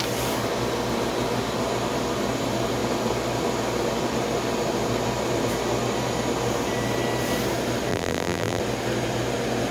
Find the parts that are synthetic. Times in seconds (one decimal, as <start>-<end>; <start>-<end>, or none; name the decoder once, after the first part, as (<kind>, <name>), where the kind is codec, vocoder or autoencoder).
7.9-8.6 (vocoder, BigVGAN v2)